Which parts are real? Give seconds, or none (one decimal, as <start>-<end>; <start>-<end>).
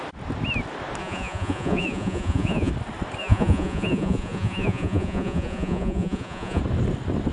0.0-1.0; 2.7-3.2; 6.6-7.3